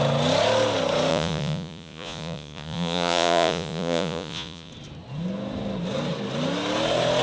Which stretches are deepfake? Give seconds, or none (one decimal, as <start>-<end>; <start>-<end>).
1.1-4.7